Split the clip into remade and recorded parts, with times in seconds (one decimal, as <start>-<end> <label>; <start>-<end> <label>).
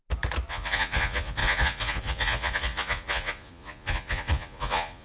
0.0-0.5 recorded; 0.5-5.0 remade